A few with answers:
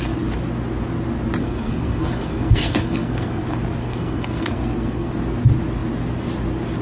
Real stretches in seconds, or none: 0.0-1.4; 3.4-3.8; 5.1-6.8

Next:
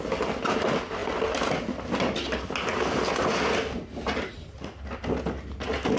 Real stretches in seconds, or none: 0.0-6.0

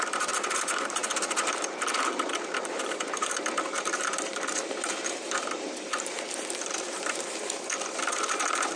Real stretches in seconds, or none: none